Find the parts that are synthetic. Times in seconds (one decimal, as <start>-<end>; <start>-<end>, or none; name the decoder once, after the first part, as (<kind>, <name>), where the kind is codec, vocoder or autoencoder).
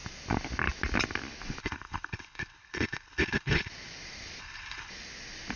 1.6-3.7 (codec, HILCodec); 4.4-4.9